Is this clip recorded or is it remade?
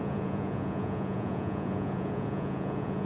remade